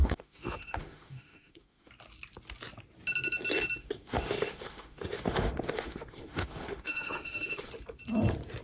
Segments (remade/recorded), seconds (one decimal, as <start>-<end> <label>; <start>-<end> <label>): 0.0-1.9 remade; 1.9-3.8 recorded; 3.8-7.7 remade; 7.7-8.6 recorded